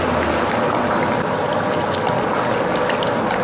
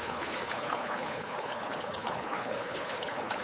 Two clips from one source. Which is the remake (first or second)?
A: second